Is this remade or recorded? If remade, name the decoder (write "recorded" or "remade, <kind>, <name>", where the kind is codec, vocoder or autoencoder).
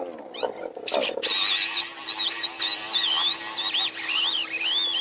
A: recorded